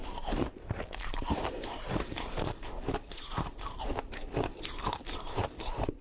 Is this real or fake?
fake